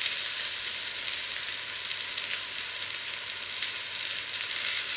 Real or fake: fake